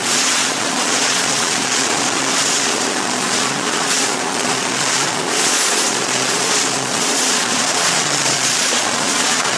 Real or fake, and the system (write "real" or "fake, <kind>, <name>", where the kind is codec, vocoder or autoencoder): fake, vocoder, Vocos